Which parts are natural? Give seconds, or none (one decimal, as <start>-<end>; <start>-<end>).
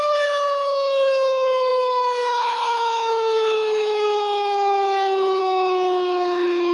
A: none